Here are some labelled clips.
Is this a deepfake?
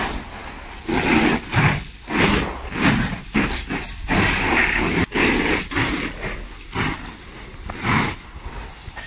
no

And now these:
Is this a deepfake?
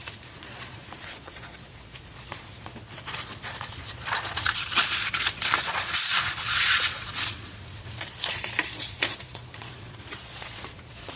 yes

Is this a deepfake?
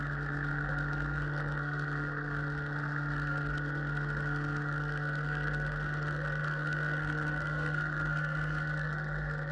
yes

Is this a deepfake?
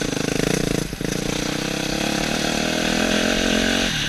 no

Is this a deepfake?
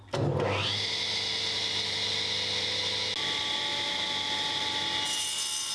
no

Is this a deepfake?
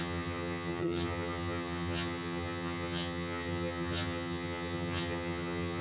yes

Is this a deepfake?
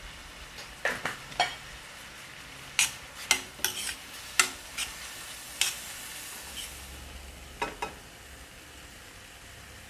no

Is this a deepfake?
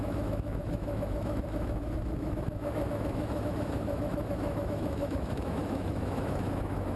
yes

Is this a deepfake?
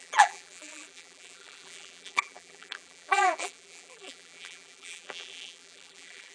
yes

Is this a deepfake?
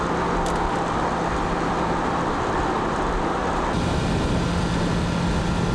no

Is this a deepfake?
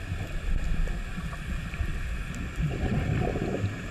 no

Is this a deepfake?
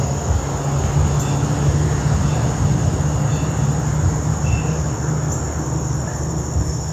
no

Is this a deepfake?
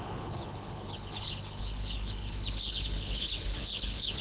yes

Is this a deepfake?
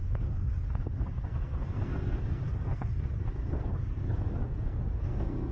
yes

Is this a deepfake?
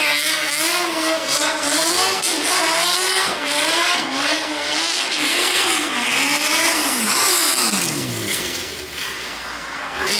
yes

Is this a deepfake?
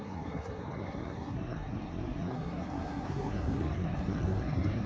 yes